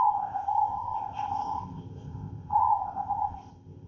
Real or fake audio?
fake